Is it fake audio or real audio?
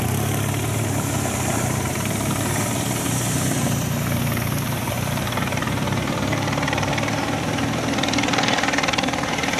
fake